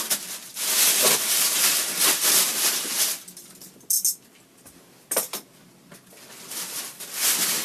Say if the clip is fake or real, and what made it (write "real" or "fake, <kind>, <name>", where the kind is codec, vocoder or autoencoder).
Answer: real